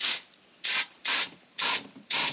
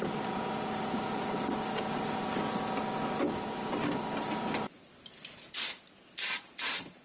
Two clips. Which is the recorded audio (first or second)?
second